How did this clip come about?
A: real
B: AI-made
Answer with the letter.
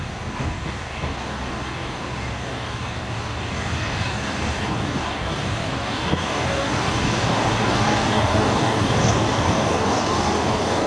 B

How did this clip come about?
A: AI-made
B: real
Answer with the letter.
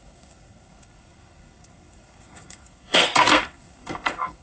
A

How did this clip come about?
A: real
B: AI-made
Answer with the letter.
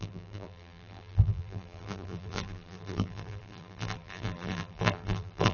B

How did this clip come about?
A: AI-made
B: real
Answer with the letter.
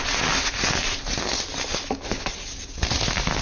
B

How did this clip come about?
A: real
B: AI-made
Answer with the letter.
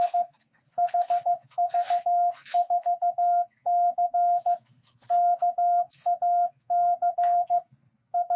B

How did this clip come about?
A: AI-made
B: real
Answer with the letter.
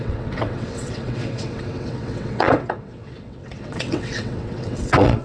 A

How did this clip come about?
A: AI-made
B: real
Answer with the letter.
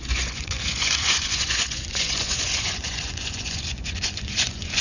A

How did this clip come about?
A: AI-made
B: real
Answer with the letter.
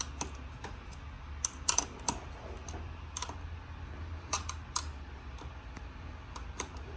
B